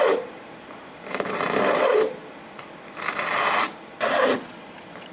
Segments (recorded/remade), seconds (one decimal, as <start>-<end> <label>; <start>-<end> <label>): 0.0-2.2 remade; 2.2-4.5 recorded; 4.5-5.1 remade